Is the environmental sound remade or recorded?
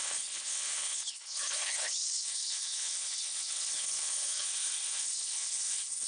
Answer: remade